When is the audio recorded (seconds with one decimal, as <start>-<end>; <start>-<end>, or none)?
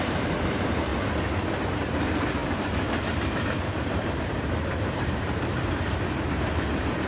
0.9-1.7